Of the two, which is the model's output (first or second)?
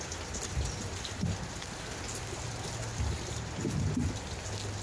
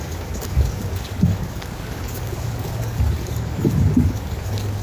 second